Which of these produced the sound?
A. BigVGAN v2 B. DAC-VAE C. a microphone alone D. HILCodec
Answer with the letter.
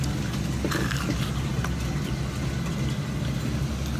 C